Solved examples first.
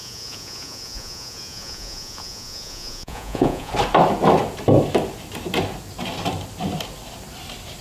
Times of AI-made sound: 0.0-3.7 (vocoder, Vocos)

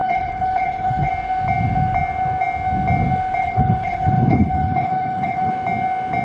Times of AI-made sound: 0.0-1.1 (codec, HILCodec); 3.4-5.5

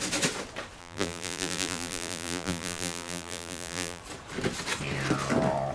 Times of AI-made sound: 0.8-4.0 (vocoder, BigVGAN v2)